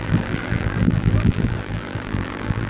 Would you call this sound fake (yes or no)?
yes